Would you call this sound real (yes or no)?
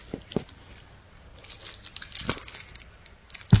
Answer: yes